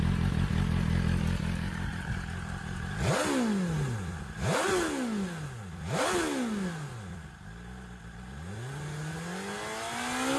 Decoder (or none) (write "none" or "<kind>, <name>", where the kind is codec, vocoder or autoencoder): none